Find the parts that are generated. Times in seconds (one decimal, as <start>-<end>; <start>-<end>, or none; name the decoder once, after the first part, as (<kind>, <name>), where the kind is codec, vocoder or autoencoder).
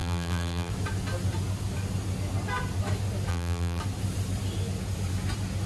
0.0-0.7 (vocoder, BigVGAN v2); 3.3-3.8